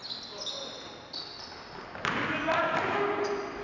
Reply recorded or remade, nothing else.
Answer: recorded